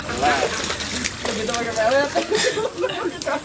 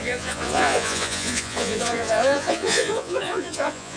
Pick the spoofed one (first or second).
second